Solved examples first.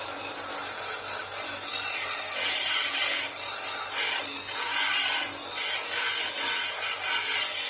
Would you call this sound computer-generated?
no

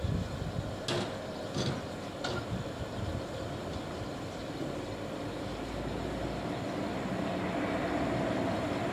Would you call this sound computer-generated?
no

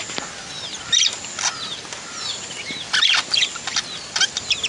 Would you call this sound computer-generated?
no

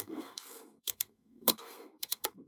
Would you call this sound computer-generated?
yes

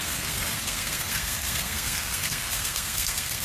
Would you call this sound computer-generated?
yes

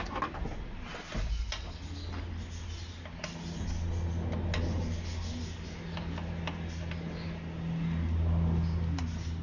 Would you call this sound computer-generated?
no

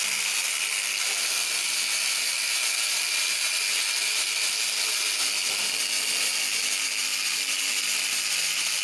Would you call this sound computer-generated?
no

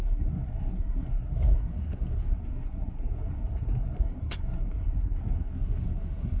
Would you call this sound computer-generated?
yes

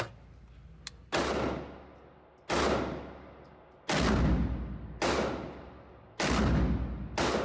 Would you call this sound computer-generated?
no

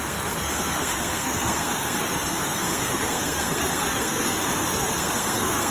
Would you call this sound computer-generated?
yes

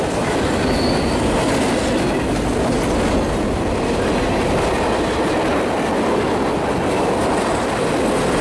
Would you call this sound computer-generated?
no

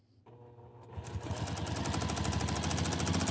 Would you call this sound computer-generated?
no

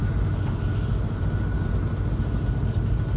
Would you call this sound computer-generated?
no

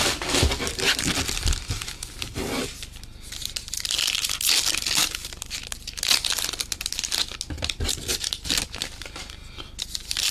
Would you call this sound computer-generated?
no